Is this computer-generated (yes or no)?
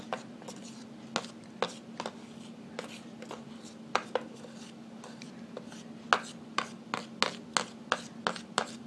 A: no